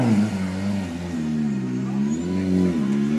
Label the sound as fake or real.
real